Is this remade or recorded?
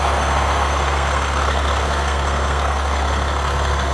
remade